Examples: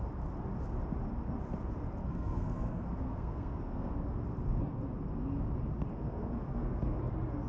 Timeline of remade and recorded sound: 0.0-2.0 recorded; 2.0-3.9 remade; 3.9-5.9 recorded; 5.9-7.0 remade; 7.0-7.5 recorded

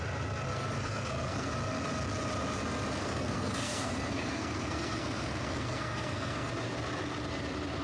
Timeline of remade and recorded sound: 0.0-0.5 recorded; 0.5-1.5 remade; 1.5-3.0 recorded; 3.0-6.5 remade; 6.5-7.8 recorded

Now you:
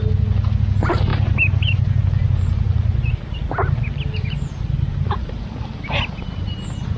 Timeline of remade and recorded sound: 0.0-7.0 recorded

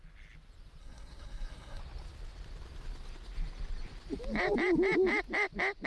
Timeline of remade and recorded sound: 0.0-0.8 recorded; 0.8-1.8 remade; 1.8-5.9 recorded

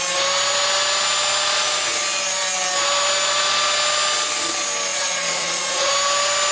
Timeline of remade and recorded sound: 0.0-4.9 recorded; 4.9-5.9 remade; 5.9-6.5 recorded